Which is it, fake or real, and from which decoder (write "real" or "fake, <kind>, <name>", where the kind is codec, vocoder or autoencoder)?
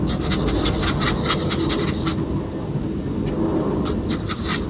real